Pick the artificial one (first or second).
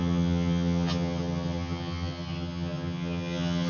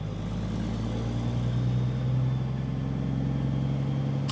first